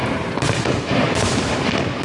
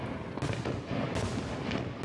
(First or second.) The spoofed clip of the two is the first